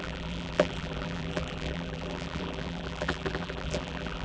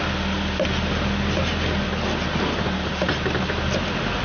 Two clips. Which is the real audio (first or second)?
second